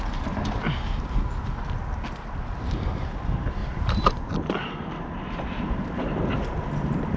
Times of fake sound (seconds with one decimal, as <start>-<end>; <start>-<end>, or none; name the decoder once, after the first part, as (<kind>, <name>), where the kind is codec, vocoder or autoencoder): 3.6-4.3 (vocoder, BigVGAN v2)